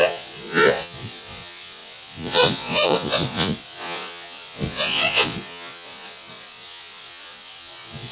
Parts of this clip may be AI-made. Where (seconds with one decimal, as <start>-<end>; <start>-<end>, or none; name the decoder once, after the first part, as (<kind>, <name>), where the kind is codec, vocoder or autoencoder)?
0.0-8.1 (vocoder, Vocos)